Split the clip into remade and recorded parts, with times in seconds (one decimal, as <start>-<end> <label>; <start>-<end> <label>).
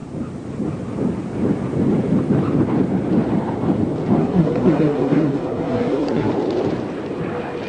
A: 0.0-4.2 recorded; 4.2-6.3 remade; 6.3-7.7 recorded